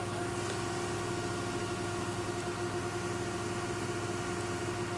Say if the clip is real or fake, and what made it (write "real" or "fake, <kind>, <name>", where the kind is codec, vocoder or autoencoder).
real